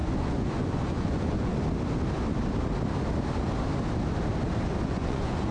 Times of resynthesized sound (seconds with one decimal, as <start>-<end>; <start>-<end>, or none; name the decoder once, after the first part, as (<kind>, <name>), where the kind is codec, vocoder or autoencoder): 0.0-1.5 (vocoder, Vocos); 4.8-5.5